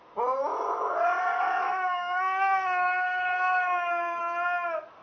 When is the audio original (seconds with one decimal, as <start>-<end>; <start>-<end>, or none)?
0.0-1.2; 4.2-5.0